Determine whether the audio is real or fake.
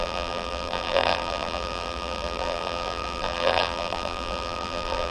fake